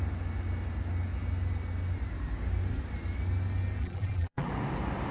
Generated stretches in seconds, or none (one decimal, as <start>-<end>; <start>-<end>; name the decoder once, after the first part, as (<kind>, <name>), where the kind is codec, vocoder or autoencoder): 3.8-4.5 (vocoder, BigVGAN v2)